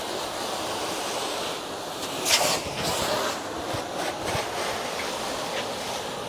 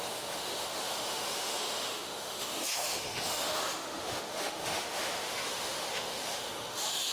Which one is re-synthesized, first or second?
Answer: second